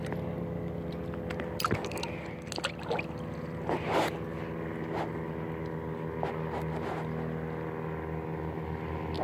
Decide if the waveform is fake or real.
real